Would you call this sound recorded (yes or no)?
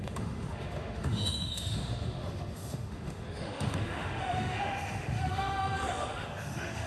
no